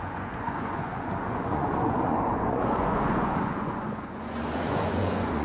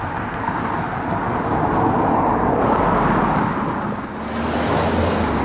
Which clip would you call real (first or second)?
second